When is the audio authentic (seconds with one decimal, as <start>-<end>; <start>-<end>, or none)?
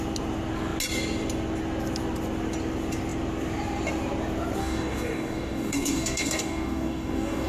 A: 0.0-4.6